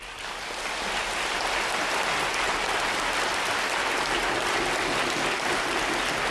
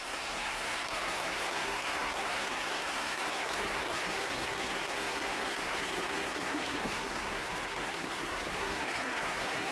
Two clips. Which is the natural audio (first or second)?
first